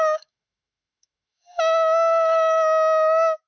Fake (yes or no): yes